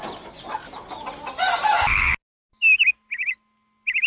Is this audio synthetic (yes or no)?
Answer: no